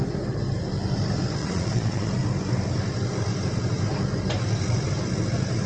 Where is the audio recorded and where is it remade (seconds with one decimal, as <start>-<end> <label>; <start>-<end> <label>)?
0.0-1.4 recorded; 1.4-2.1 remade; 2.1-5.7 recorded